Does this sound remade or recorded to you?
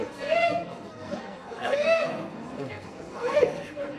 remade